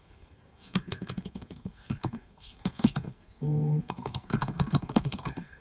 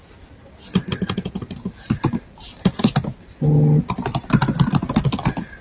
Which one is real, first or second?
second